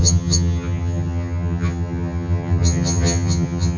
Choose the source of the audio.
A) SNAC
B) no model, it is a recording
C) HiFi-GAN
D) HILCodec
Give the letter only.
C